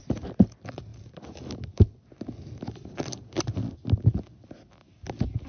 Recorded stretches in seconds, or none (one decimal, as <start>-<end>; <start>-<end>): 0.0-5.5